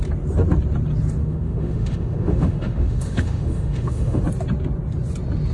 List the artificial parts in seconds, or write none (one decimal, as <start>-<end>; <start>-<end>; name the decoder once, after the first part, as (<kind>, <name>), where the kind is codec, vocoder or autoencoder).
1.2-4.2 (autoencoder, DAC-VAE)